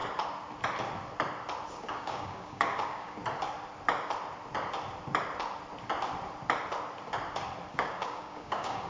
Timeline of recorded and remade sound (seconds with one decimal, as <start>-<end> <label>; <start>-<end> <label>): 0.0-1.7 recorded; 1.7-3.2 remade; 3.2-7.7 recorded; 7.7-8.9 remade